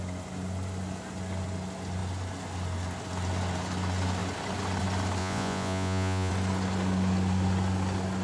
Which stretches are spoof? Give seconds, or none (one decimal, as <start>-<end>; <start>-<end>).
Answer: 5.2-6.3